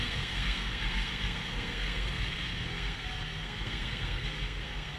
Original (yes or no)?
no